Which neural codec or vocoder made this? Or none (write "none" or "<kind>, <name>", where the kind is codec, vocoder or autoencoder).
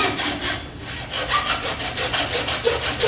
none